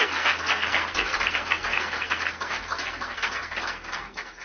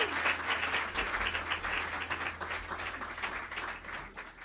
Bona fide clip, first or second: second